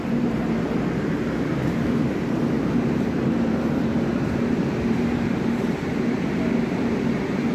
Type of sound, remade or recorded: remade